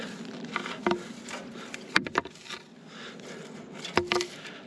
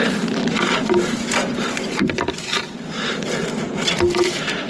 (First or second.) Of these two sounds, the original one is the first